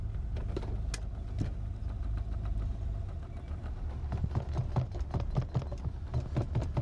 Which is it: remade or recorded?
recorded